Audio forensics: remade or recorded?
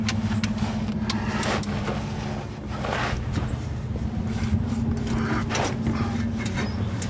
recorded